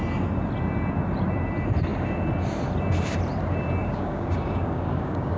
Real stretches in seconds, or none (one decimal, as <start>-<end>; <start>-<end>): 0.0-3.8